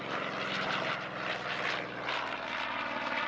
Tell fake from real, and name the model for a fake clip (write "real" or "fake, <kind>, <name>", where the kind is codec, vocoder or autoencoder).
real